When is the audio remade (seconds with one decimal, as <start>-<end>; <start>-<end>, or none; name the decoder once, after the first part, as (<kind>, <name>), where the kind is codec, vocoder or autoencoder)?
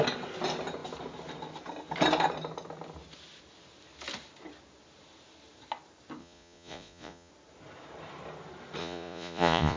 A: 6.2-7.3 (vocoder, Vocos); 8.8-9.8